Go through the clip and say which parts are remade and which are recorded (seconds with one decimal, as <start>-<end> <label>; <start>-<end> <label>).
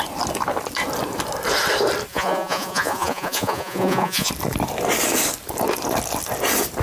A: 0.0-2.1 recorded; 2.1-4.3 remade; 4.3-6.8 recorded